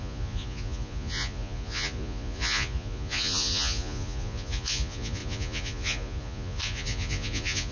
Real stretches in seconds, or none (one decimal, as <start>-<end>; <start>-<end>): none